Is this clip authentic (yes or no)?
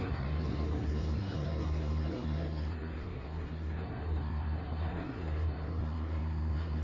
no